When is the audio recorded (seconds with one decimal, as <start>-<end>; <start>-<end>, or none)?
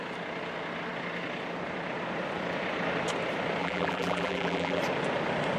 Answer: 0.0-3.6; 4.8-5.6